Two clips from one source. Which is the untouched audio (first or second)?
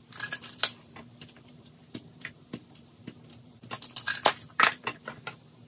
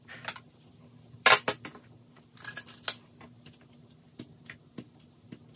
second